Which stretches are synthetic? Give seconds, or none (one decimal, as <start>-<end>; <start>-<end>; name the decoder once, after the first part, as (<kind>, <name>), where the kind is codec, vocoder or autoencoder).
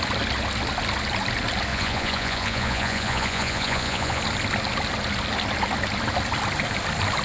1.7-4.2 (vocoder, Vocos)